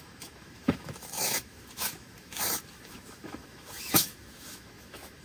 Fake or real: fake